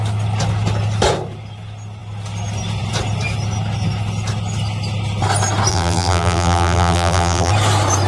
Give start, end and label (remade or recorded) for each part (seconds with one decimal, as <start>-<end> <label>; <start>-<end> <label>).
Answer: 0.0-5.7 recorded; 5.7-7.5 remade; 7.5-8.1 recorded